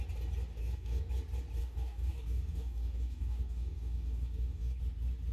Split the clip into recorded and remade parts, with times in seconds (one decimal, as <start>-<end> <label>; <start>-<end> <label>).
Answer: 0.0-0.6 recorded; 0.6-1.1 remade; 1.1-1.6 recorded; 1.6-4.8 remade; 4.8-5.3 recorded

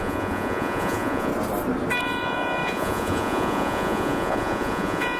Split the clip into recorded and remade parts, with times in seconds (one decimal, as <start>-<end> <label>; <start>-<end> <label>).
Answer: 0.0-1.3 remade; 1.3-2.0 recorded; 2.0-5.2 remade